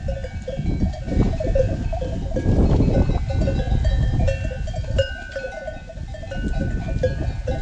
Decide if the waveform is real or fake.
real